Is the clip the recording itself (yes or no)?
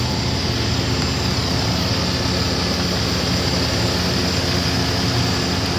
yes